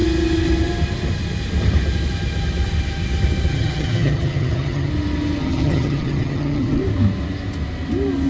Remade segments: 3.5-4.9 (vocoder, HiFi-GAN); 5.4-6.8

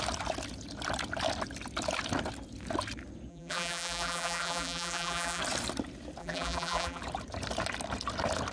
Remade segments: 3.3-5.4 (vocoder, BigVGAN v2); 6.2-7.0

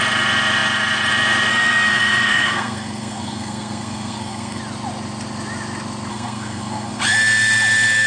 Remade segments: 1.5-4.6 (codec, SNAC); 6.1-7.0